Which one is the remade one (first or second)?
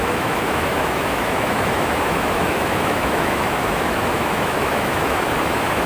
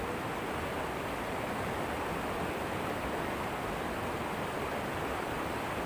first